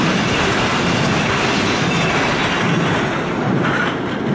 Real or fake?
real